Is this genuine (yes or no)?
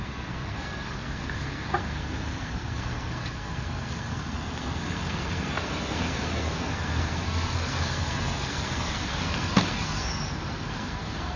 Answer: no